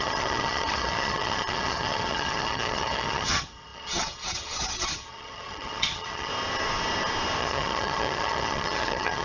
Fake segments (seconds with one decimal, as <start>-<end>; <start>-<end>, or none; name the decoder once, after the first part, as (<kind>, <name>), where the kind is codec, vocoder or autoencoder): 0.0-6.3 (vocoder, HiFi-GAN); 7.4-9.2